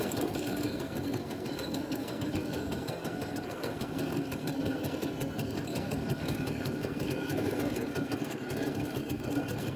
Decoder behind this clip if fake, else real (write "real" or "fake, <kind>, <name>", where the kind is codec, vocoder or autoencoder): fake, codec, SNAC